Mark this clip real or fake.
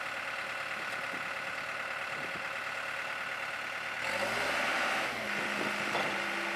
real